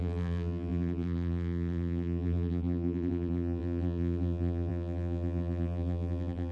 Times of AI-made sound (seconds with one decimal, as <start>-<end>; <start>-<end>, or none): 0.0-6.5